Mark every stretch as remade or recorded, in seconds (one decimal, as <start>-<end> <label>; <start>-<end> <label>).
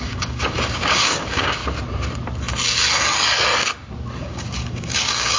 0.0-1.6 remade; 1.6-4.2 recorded; 4.2-5.4 remade